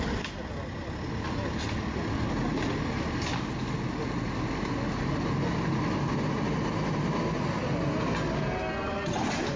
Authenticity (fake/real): real